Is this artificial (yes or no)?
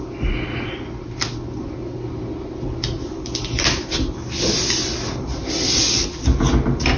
no